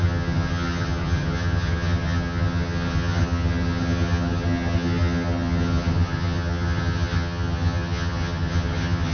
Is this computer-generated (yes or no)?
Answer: yes